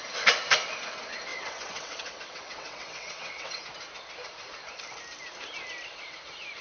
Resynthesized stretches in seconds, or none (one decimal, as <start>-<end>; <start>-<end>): 1.3-3.6